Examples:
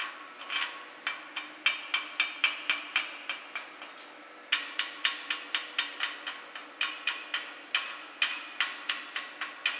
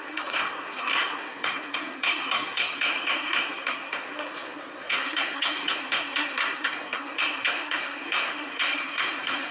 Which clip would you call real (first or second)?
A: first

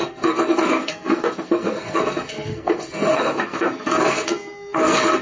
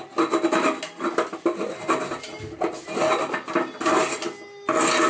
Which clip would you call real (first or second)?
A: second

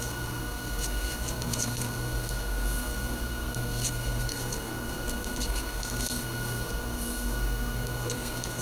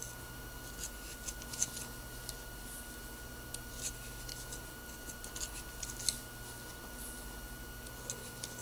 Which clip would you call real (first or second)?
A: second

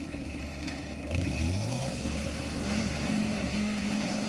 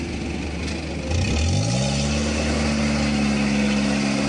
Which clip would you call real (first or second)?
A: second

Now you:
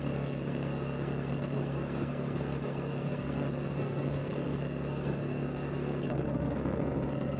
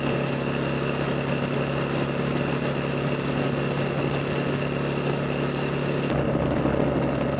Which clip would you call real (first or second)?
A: second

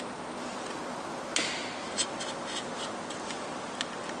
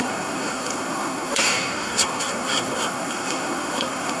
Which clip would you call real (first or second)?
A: first